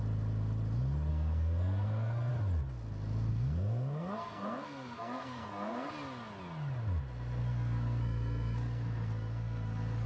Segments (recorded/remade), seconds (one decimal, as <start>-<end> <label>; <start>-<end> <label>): 0.0-1.1 recorded; 1.1-2.3 remade; 2.3-3.3 recorded; 3.3-5.9 remade; 5.9-7.4 recorded; 7.4-10.1 remade